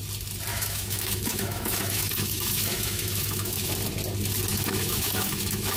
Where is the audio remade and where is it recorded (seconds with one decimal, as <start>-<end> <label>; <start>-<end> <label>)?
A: 0.0-0.5 recorded; 0.5-3.7 remade; 3.7-4.5 recorded; 4.5-5.8 remade